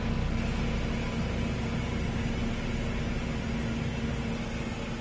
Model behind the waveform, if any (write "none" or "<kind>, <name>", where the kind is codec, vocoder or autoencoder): none